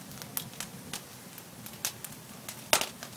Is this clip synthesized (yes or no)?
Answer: no